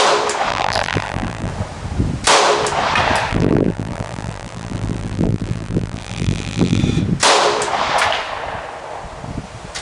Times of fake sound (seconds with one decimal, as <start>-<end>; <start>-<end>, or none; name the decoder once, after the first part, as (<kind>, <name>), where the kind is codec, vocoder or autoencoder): 0.5-1.5 (vocoder, BigVGAN v2); 3.3-6.8